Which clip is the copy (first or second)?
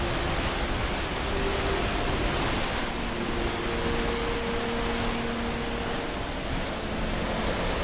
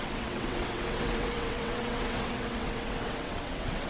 second